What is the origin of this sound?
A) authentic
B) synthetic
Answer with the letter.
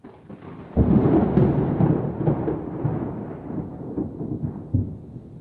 A